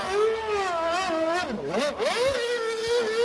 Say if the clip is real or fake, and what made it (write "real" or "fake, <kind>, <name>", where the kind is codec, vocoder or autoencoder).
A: real